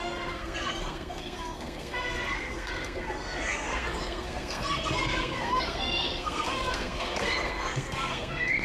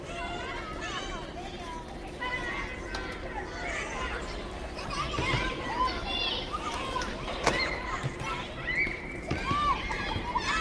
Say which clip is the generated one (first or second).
first